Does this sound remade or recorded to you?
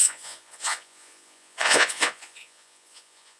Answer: remade